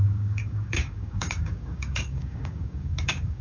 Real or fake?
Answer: fake